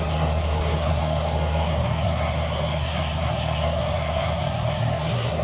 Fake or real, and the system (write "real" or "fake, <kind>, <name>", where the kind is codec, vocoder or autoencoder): fake, codec, SNAC